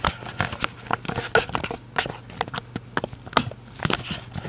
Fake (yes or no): no